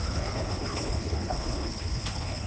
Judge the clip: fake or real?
fake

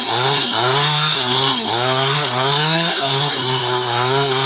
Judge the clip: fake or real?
fake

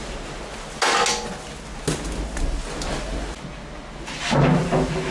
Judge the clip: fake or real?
real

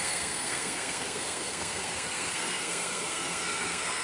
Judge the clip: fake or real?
fake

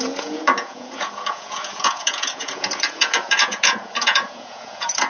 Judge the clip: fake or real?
fake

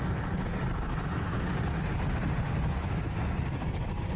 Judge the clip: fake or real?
real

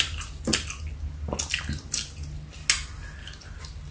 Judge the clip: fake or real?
real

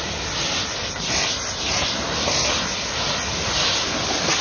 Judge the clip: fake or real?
real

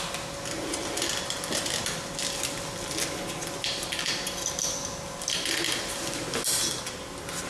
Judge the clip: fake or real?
real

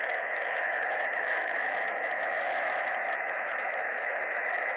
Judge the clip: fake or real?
fake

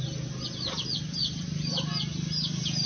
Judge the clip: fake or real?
real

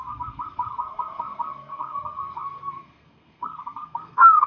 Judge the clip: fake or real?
fake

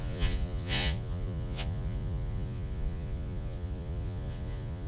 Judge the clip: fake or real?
fake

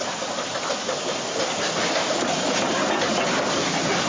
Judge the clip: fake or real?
real